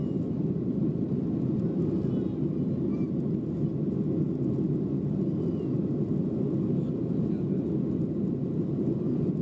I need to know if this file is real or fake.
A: real